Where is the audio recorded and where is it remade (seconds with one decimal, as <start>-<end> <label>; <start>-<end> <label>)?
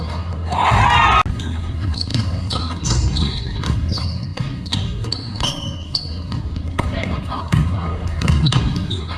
0.0-0.8 remade; 0.8-1.3 recorded; 1.3-9.2 remade